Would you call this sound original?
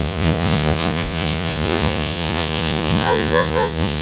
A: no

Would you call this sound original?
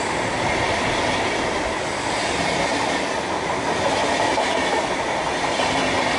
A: yes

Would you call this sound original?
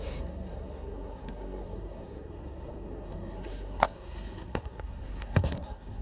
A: no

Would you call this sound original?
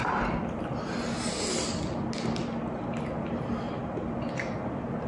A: yes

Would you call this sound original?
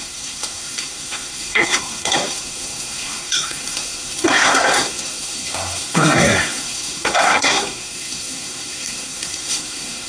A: no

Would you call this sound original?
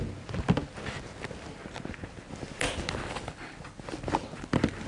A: yes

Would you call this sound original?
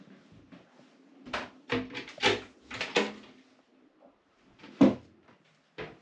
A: yes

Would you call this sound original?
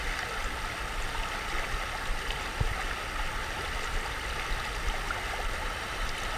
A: yes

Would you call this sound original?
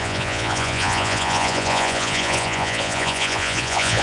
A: no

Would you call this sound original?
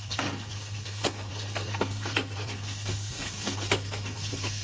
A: no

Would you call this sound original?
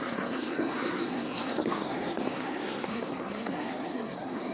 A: no